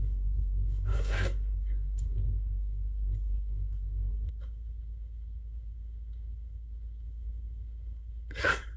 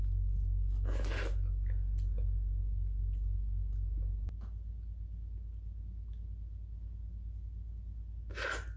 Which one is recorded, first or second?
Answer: second